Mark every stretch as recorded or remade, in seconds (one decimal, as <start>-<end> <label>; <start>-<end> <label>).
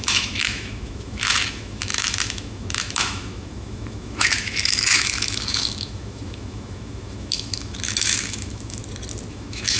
0.0-8.8 remade; 8.8-9.3 recorded; 9.3-9.8 remade